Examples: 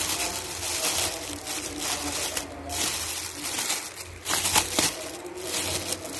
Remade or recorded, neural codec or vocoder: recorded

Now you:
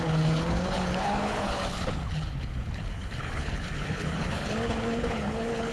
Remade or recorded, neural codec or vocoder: remade, codec, HILCodec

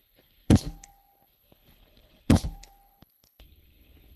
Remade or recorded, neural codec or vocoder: remade, codec, HILCodec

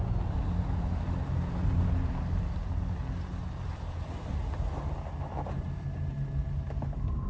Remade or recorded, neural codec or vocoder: recorded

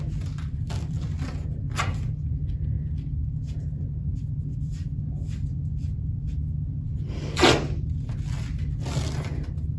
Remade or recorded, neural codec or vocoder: recorded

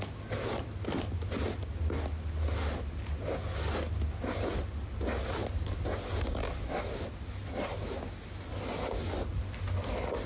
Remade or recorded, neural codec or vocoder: recorded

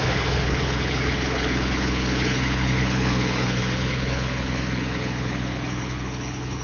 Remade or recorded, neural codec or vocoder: remade, codec, HILCodec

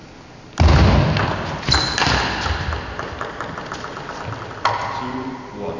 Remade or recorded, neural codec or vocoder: recorded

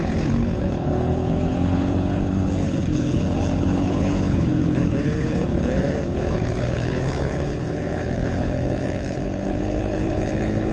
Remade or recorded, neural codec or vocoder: remade, codec, HILCodec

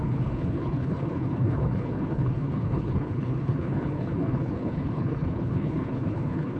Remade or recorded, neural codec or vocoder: remade, codec, HILCodec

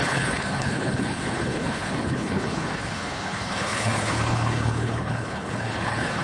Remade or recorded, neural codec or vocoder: remade, codec, HILCodec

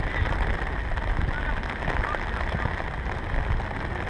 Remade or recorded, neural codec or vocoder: recorded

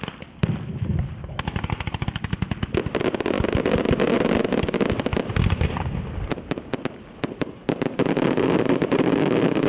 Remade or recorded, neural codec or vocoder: recorded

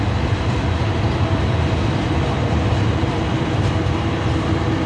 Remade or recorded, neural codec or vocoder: recorded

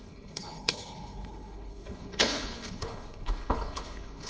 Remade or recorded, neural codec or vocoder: remade, codec, HILCodec